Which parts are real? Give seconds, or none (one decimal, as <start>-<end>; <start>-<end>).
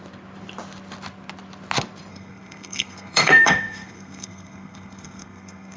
0.0-2.1